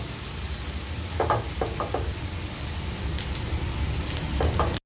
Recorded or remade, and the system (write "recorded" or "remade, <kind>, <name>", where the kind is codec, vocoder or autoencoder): recorded